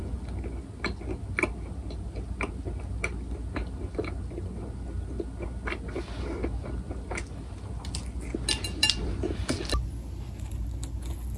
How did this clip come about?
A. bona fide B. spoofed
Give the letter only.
A